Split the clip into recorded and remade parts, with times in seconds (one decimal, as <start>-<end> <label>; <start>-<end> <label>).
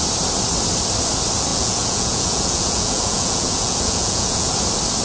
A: 0.0-1.5 recorded; 1.5-4.5 remade; 4.5-5.0 recorded